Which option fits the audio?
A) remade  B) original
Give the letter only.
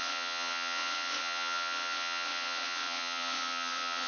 A